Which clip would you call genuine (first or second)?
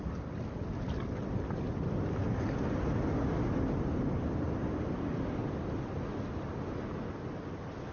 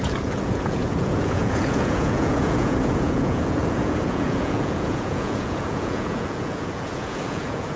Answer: first